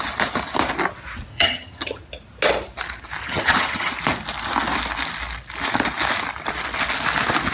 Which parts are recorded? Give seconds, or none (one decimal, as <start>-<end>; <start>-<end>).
0.0-1.3; 2.0-3.2; 3.9-7.5